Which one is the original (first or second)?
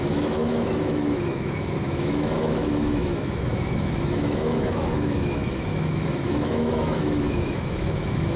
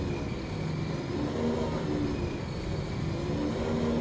second